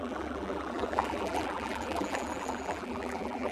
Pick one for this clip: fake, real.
fake